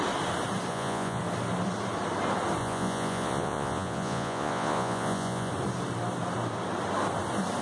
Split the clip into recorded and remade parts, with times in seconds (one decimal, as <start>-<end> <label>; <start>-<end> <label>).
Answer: 0.0-0.7 recorded; 0.7-1.2 remade; 1.2-2.6 recorded; 2.6-5.5 remade; 5.5-7.6 recorded